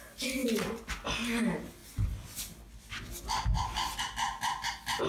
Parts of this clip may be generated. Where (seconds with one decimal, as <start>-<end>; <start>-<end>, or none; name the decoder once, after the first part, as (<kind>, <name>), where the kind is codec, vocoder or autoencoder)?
0.4-0.9 (vocoder, BigVGAN v2); 1.8-4.0